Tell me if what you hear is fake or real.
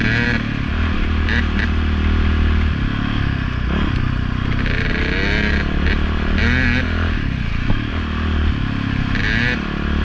real